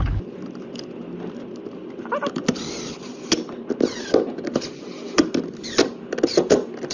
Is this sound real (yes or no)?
yes